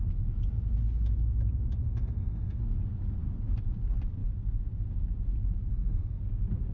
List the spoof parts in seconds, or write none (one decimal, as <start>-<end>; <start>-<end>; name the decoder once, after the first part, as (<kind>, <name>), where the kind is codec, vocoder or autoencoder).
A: 1.8-2.6 (codec, SNAC); 5.7-6.2